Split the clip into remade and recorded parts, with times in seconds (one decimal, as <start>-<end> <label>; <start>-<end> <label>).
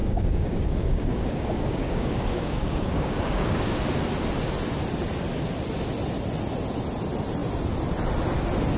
0.0-3.8 remade; 3.8-8.8 recorded